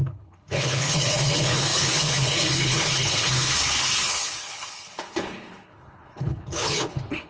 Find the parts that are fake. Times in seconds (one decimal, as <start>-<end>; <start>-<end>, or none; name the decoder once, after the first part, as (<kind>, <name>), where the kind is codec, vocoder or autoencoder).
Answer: 0.0-7.3 (codec, HILCodec)